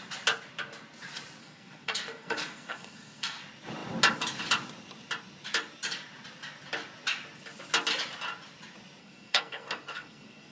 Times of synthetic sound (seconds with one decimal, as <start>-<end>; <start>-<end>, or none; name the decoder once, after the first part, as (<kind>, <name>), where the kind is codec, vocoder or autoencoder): 1.4-3.4 (codec, SNAC); 9.0-10.5